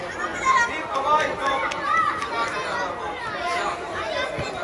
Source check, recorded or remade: recorded